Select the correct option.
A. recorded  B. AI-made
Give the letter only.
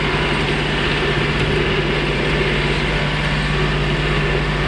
A